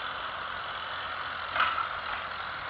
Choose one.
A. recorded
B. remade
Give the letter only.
A